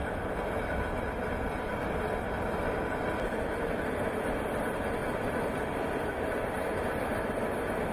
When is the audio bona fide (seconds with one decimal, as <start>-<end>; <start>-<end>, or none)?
0.0-7.9